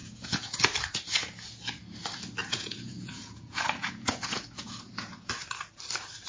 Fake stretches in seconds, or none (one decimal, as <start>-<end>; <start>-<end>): 0.0-0.6; 2.4-5.3